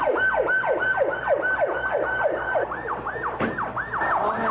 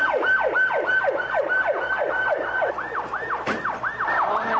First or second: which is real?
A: first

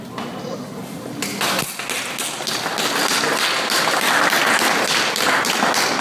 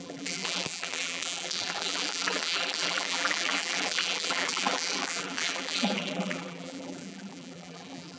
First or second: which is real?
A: first